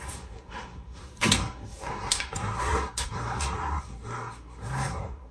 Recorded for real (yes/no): no